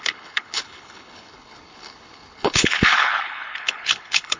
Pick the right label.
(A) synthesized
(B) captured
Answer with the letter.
A